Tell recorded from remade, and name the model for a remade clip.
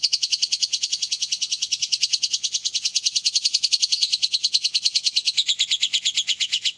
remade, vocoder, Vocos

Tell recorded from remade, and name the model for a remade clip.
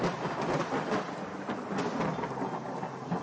recorded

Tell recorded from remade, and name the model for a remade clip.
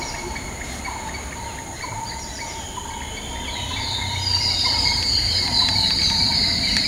remade, vocoder, BigVGAN v2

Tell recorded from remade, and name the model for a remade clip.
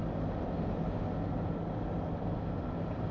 recorded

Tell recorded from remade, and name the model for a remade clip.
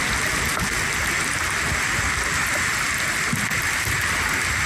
recorded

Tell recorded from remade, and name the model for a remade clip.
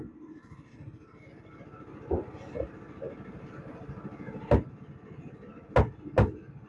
recorded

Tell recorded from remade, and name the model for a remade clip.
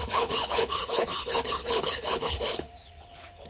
remade, codec, HILCodec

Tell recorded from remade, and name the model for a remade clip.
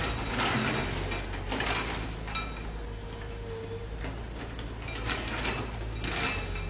recorded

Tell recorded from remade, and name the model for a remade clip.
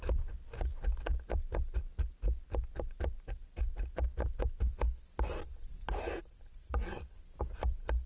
recorded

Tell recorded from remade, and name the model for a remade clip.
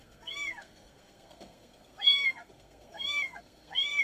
remade, codec, SNAC